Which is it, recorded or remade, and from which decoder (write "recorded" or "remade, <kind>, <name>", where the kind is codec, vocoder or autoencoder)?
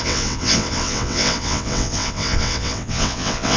remade, vocoder, WaveNeXt